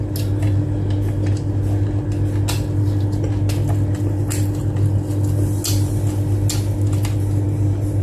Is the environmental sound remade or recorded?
recorded